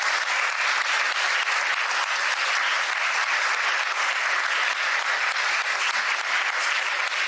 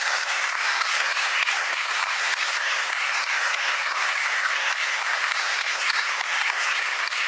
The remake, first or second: second